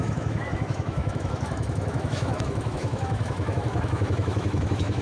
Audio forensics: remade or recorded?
remade